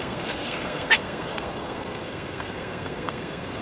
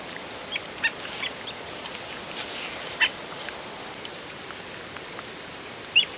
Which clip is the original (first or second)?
second